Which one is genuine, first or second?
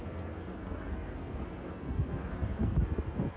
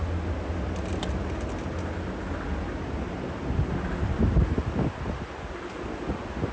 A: second